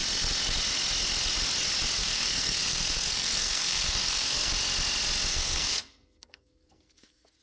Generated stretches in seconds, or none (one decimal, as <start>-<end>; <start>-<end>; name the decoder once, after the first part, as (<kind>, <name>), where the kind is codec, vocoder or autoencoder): 2.0-4.5 (codec, SNAC); 5.3-7.4